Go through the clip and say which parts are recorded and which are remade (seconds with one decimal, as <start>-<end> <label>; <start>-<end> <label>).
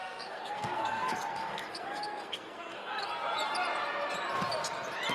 0.0-3.1 remade; 3.1-5.1 recorded